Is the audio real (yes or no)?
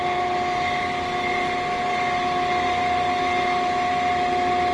yes